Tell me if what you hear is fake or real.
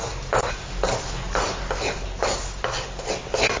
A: real